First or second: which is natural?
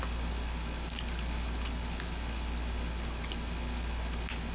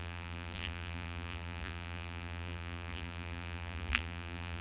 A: first